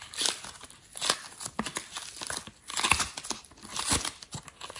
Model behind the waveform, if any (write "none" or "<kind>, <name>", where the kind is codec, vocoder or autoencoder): none